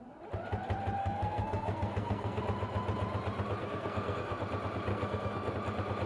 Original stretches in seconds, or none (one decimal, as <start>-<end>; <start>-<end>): 0.0-1.0; 2.4-3.6; 4.4-4.9; 5.5-6.1